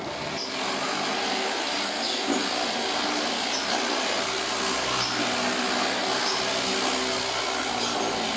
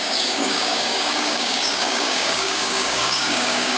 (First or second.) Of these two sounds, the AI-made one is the second